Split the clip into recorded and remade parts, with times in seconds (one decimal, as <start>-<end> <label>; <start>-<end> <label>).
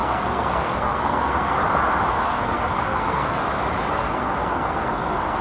0.0-1.6 remade; 1.6-2.1 recorded; 2.1-3.4 remade; 3.4-3.9 recorded; 3.9-5.4 remade